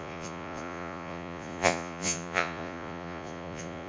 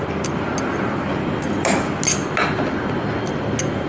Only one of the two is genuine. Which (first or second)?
second